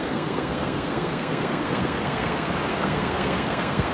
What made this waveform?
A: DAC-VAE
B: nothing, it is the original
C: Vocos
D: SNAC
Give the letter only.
D